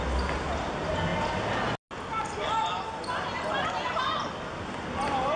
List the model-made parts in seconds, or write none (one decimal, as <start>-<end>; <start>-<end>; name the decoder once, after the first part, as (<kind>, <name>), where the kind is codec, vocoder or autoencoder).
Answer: none